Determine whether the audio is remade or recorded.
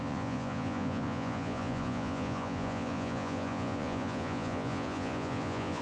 remade